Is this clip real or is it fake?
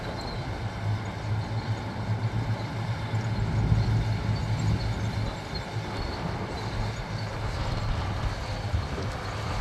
real